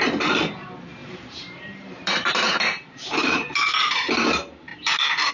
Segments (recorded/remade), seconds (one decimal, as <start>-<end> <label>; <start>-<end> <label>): 0.0-1.0 recorded; 1.0-4.1 remade; 4.1-4.7 recorded; 4.7-5.3 remade

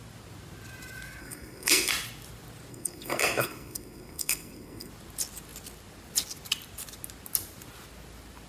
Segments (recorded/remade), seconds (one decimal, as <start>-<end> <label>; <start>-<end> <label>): 0.0-1.2 recorded; 1.2-1.9 remade; 1.9-2.7 recorded; 2.7-4.9 remade; 4.9-8.5 recorded

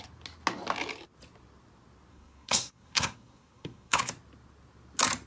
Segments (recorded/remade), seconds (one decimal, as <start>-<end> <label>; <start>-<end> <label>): 0.0-2.1 recorded; 2.1-4.1 remade; 4.1-5.3 recorded